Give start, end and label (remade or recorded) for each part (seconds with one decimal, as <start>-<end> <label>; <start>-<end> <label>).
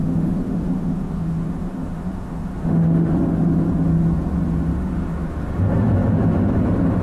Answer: 0.0-3.1 remade; 3.1-4.7 recorded; 4.7-5.4 remade; 5.4-7.0 recorded